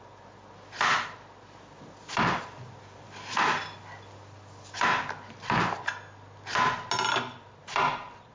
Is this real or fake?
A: real